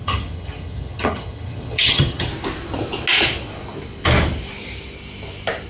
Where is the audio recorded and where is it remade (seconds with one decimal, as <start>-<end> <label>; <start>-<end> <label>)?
0.0-2.3 remade; 2.3-5.7 recorded